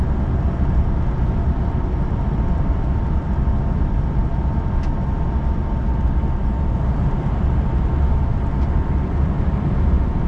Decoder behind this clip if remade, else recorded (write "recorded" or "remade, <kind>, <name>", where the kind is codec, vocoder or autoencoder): recorded